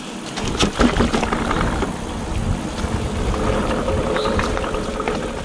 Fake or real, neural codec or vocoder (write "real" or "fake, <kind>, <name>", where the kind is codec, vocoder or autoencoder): real